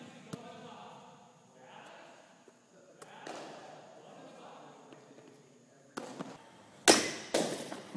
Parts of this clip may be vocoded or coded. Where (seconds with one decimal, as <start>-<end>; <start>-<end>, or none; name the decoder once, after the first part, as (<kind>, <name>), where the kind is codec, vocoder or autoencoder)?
7.5-8.0 (vocoder, Vocos)